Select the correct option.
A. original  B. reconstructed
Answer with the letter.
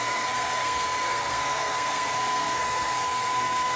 B